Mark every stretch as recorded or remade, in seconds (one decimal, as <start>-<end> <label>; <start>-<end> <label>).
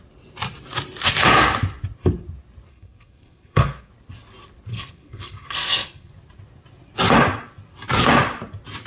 0.0-2.7 recorded; 2.7-3.9 remade; 3.9-4.7 recorded; 4.7-6.1 remade; 6.1-8.9 recorded